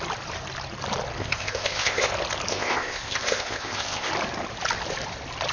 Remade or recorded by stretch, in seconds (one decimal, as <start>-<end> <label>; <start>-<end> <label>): 0.0-1.2 recorded; 1.2-2.1 remade; 2.1-2.5 recorded; 2.5-4.1 remade; 4.1-5.5 recorded